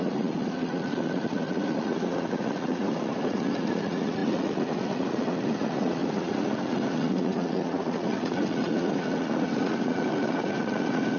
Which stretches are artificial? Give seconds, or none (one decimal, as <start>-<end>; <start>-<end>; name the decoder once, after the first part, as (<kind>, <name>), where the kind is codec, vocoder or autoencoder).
0.0-11.2 (vocoder, Vocos)